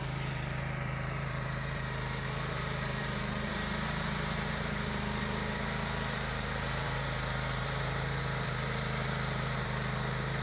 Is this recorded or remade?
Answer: remade